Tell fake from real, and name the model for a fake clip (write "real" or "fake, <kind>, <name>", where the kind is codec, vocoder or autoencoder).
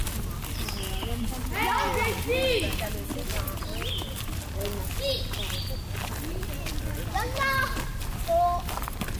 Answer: real